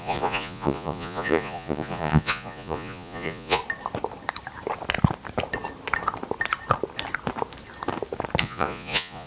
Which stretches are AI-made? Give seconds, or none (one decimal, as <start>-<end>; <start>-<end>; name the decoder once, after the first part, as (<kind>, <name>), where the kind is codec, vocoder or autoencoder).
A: 0.0-3.6 (vocoder, Vocos); 8.4-9.3